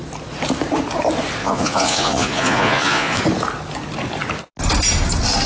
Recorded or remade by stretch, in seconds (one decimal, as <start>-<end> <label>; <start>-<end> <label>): 0.0-1.4 recorded; 1.4-3.2 remade; 3.2-5.5 recorded